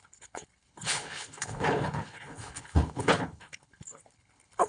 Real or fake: fake